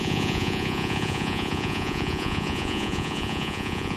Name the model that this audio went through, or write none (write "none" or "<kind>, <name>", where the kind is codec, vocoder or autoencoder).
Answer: vocoder, Vocos